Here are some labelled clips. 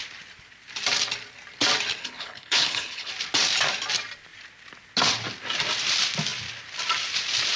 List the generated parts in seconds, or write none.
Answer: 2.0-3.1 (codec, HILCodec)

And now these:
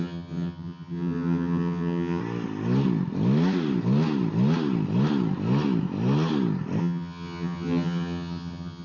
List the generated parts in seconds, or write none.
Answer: 0.0-2.2 (vocoder, HiFi-GAN); 6.8-8.8

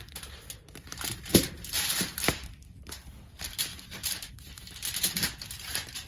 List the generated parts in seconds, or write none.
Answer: 1.3-1.9 (vocoder, BigVGAN v2); 3.7-4.3

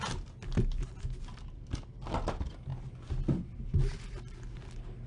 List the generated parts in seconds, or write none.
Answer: none

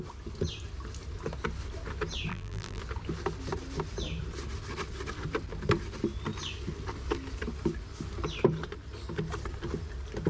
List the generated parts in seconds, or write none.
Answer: 2.3-2.8 (vocoder, BigVGAN v2)

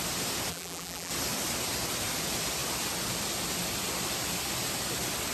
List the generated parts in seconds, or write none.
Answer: 0.5-1.1 (vocoder, BigVGAN v2)